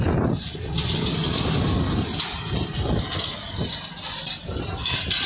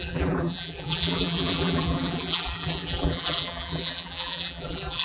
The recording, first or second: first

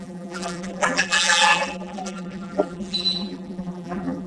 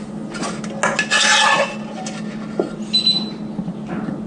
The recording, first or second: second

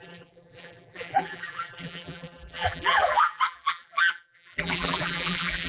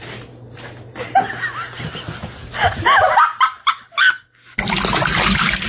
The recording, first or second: second